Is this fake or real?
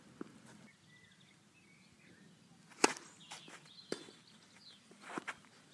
real